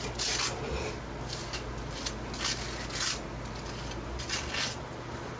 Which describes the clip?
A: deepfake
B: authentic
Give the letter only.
B